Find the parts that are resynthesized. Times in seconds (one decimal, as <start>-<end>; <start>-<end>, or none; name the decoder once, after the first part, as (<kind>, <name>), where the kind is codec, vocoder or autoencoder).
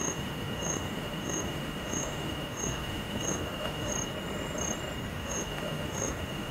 0.0-3.9 (autoencoder, DAC-VAE); 5.1-6.5